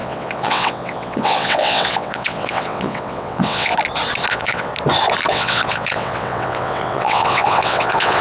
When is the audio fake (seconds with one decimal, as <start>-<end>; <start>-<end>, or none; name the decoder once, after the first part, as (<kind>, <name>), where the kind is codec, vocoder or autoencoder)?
0.0-3.7 (vocoder, WaveNeXt); 4.3-4.7; 5.3-8.2